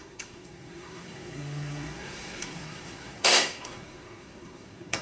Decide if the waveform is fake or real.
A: fake